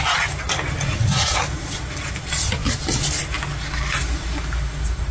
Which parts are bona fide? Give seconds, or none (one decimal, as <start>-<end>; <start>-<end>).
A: 0.0-5.1